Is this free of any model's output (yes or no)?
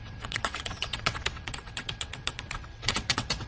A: no